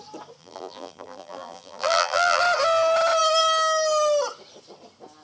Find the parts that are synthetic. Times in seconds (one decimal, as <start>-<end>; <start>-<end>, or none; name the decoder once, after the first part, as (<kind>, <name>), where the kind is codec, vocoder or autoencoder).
0.4-2.4 (vocoder, BigVGAN v2)